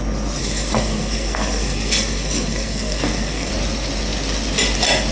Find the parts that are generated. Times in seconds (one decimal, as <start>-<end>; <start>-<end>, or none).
0.4-3.5